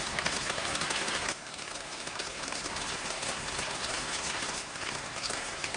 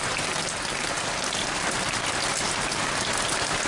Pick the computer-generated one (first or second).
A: first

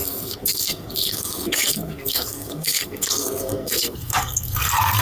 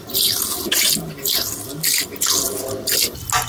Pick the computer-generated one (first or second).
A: first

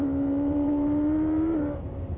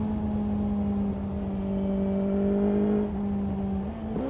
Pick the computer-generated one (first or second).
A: first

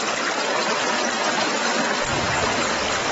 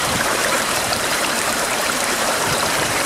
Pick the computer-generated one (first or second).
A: second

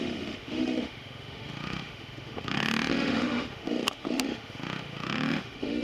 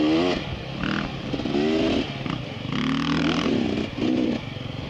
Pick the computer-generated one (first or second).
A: first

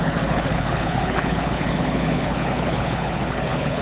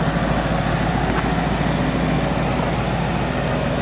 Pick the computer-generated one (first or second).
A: first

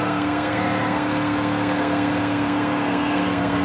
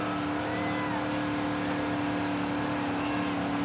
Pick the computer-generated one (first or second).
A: first